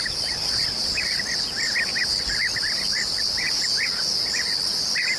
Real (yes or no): yes